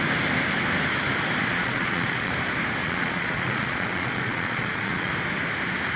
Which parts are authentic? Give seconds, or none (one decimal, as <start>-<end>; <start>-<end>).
0.0-1.5; 2.3-2.8; 5.1-6.0